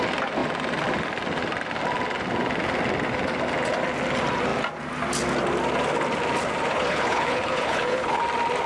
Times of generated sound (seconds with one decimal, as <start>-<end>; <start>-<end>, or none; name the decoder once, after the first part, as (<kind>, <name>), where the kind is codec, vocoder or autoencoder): 6.7-8.2 (codec, HILCodec)